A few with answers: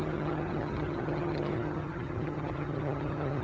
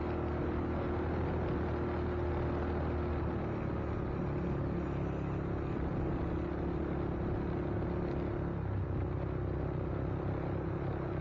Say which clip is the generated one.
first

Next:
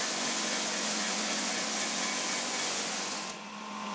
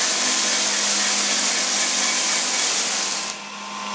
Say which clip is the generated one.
first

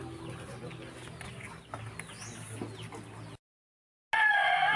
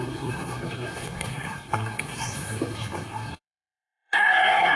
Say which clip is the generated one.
second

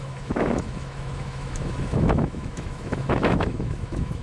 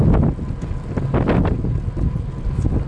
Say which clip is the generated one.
first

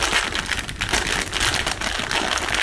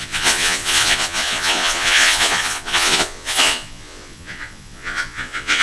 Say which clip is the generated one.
second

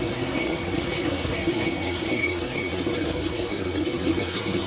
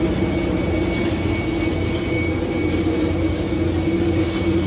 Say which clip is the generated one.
first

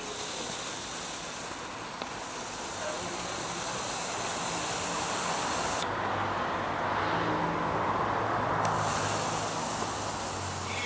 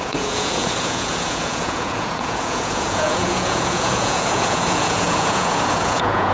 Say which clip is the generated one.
second